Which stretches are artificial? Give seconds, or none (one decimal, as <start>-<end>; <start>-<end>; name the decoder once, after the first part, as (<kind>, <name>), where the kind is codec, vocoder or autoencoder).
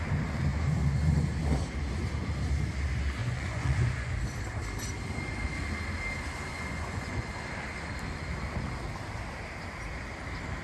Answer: 3.2-4.2 (vocoder, Vocos); 6.5-7.3